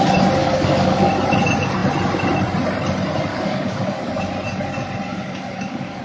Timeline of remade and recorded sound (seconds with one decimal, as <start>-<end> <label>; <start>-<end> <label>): 0.0-0.4 recorded; 0.4-1.1 remade; 1.1-3.3 recorded; 3.3-4.1 remade; 4.1-5.1 recorded; 5.1-6.0 remade